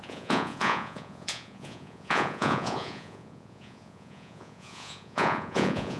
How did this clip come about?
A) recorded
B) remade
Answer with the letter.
B